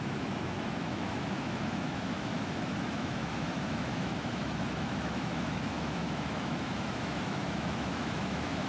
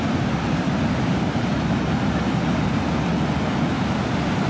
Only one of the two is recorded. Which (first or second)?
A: second